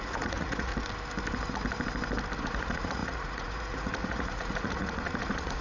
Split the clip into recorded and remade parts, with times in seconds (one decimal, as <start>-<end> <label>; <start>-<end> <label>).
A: 0.0-0.7 remade; 0.7-2.4 recorded; 2.4-5.6 remade